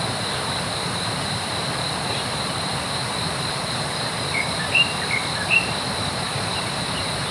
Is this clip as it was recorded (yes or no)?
no